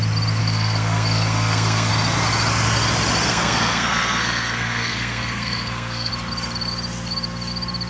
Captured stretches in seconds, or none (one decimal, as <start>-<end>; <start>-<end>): 0.0-0.4; 1.9-3.3; 6.1-7.9